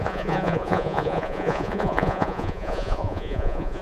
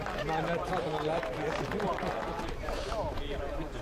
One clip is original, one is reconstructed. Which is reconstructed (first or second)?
first